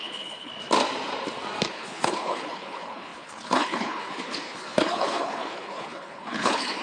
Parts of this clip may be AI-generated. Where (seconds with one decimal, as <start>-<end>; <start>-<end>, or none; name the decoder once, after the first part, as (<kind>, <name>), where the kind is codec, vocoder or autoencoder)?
0.0-0.5 (codec, HILCodec); 1.7-6.8